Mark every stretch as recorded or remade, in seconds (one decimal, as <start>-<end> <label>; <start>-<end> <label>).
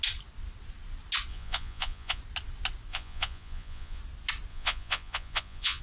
0.0-1.3 recorded; 1.3-2.2 remade; 2.2-2.9 recorded; 2.9-4.0 remade; 4.0-4.5 recorded; 4.5-5.8 remade